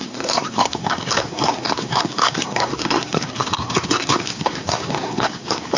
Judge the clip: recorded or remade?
remade